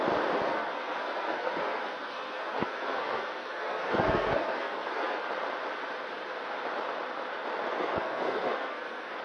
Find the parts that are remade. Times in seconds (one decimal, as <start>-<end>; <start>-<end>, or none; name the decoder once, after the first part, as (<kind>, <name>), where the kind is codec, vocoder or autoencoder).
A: 0.5-5.3 (codec, SNAC); 7.7-9.2